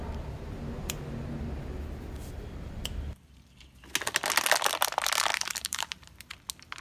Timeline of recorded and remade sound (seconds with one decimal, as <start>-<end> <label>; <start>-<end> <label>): 0.0-5.3 recorded; 5.3-6.3 remade; 6.3-6.8 recorded